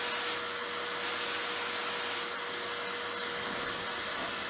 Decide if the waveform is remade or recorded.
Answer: recorded